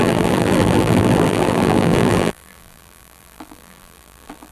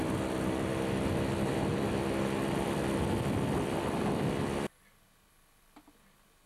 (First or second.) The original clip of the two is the second